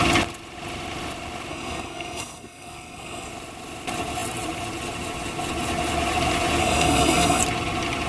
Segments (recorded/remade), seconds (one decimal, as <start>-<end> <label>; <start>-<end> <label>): 0.0-1.5 recorded; 1.5-3.3 remade; 3.3-6.6 recorded; 6.6-7.4 remade; 7.4-8.1 recorded